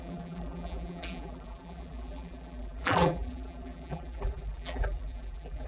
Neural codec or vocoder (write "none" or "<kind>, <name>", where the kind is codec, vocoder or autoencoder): vocoder, BigVGAN v2